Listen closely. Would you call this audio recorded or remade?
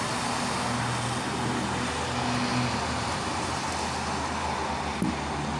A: recorded